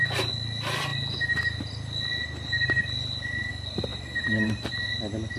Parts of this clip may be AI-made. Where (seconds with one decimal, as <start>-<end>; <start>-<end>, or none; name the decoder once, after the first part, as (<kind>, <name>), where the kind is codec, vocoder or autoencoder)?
3.9-4.9 (vocoder, BigVGAN v2)